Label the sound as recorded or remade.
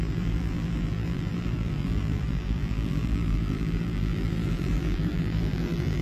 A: remade